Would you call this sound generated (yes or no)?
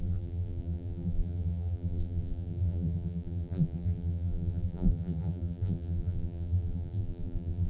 yes